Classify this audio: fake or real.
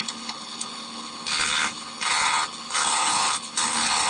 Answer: fake